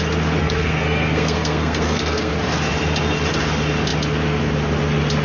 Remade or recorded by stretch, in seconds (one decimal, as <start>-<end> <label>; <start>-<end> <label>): 0.0-0.4 recorded; 0.4-2.3 remade; 2.3-5.2 recorded